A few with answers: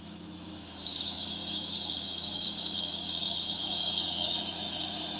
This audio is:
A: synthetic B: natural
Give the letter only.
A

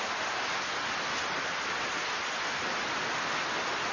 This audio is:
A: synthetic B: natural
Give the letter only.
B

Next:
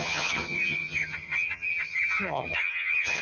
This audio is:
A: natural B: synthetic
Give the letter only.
B